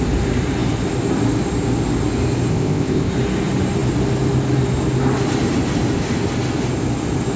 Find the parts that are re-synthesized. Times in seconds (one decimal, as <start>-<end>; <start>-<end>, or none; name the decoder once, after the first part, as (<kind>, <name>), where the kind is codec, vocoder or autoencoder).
2.5-3.1 (codec, ZipCodec)